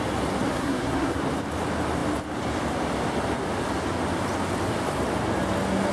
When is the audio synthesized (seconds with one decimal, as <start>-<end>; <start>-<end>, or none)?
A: 0.5-1.2